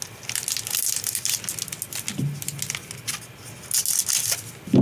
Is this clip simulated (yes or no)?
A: no